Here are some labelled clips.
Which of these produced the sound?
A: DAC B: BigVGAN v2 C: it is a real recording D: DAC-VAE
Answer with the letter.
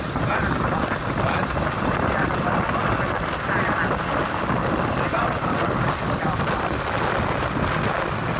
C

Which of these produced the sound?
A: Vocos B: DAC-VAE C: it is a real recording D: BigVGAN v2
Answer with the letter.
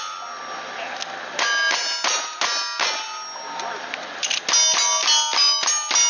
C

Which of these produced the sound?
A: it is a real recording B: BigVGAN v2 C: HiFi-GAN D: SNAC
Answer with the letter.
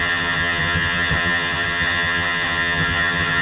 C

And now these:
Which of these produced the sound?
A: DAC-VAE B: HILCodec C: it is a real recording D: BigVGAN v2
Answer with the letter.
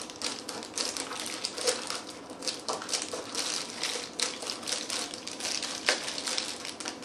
C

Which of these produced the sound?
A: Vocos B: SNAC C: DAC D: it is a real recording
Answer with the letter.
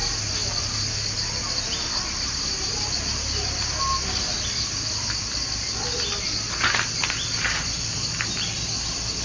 D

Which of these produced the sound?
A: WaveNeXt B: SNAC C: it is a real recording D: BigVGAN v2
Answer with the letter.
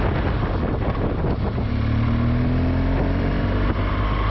C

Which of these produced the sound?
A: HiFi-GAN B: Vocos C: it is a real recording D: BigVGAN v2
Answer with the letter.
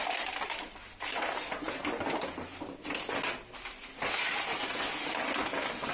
C